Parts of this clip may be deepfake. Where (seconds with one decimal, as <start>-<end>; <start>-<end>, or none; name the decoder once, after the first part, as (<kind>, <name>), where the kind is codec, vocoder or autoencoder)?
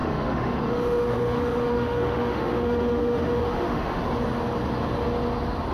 0.0-4.0 (autoencoder, DAC-VAE)